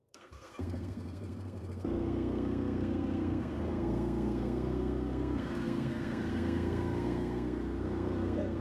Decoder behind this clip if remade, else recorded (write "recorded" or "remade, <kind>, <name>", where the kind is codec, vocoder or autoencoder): remade, codec, SNAC